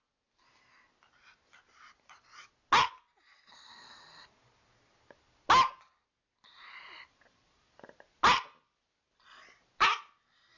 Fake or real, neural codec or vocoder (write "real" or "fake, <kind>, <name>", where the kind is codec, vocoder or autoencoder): real